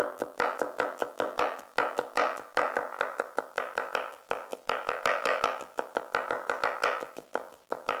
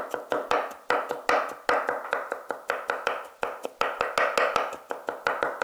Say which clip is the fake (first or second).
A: first